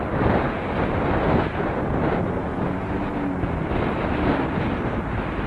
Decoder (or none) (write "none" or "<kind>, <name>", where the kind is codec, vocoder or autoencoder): none